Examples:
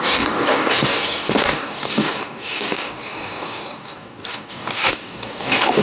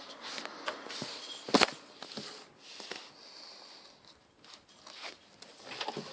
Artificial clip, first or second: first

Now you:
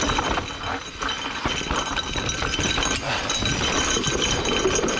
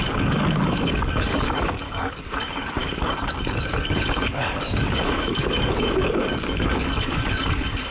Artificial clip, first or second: second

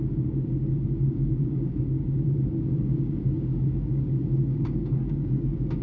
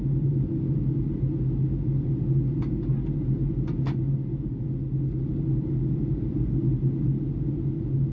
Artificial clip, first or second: first